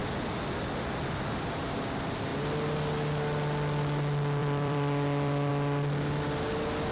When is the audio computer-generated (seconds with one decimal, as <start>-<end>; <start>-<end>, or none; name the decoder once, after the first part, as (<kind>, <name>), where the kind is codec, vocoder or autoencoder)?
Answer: 4.4-5.5 (vocoder, BigVGAN v2)